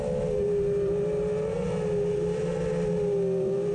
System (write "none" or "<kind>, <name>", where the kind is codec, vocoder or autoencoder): none